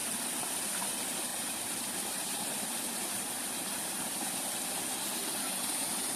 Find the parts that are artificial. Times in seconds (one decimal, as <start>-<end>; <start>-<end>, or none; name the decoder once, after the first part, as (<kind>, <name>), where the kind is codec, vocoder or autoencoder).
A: 0.0-0.6 (vocoder, BigVGAN v2); 1.3-4.1